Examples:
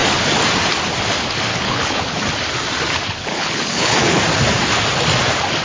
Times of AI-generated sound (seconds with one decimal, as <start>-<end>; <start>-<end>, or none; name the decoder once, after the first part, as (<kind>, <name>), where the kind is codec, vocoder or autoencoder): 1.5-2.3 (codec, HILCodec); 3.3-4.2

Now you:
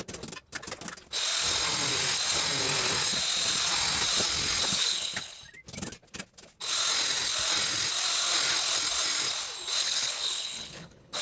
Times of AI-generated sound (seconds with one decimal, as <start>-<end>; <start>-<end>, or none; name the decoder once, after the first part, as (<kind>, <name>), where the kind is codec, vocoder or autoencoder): 4.7-5.4 (codec, HILCodec); 9.8-11.2

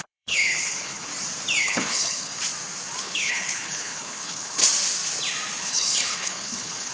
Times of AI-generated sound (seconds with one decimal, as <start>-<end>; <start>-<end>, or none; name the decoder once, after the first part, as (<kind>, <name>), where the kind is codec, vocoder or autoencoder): 0.0-1.1 (codec, HILCodec); 1.6-2.3; 3.0-4.6; 5.6-6.9

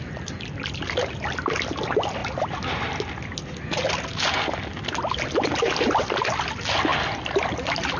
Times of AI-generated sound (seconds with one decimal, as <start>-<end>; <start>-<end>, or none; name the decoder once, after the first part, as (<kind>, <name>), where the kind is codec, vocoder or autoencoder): none